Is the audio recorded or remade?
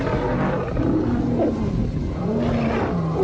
recorded